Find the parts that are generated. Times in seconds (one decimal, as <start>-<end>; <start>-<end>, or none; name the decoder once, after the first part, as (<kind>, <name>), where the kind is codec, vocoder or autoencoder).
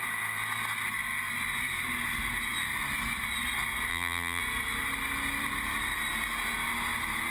3.9-4.4 (vocoder, BigVGAN v2)